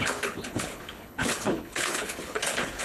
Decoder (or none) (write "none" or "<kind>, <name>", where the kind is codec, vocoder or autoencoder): codec, HILCodec